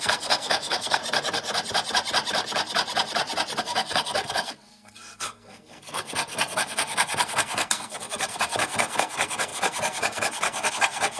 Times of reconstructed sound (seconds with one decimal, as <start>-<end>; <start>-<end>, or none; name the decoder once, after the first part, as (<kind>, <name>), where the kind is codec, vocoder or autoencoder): 0.0-1.0 (codec, SNAC); 3.6-11.2